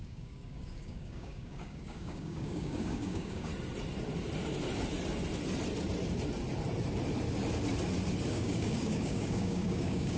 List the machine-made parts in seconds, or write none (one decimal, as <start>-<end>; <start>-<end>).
0.0-3.5; 8.3-10.2